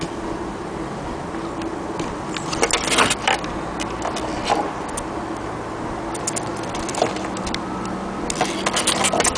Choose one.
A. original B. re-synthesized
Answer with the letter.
A